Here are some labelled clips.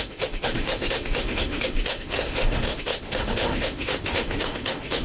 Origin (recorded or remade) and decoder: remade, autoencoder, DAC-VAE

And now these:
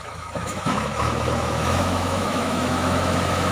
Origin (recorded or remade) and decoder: remade, autoencoder, DAC-VAE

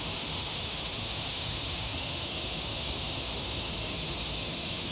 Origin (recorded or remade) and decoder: remade, autoencoder, DAC-VAE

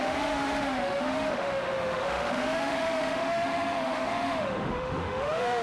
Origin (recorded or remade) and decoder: remade, autoencoder, DAC-VAE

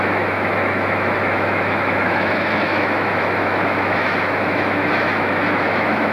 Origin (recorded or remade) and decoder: remade, autoencoder, DAC-VAE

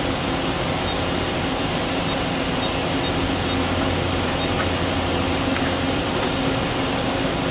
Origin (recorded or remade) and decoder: recorded